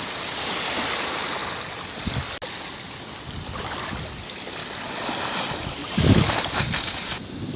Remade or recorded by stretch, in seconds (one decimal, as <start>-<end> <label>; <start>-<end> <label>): 0.0-7.6 recorded